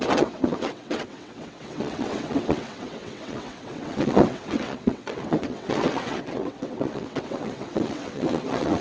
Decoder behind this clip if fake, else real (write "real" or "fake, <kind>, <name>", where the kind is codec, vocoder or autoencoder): fake, vocoder, WaveNeXt